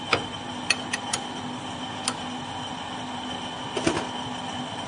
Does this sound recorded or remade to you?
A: recorded